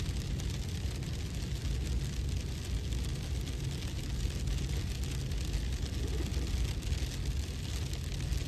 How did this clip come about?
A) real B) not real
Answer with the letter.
A